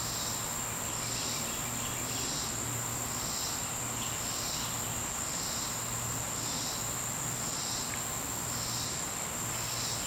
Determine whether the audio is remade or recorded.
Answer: recorded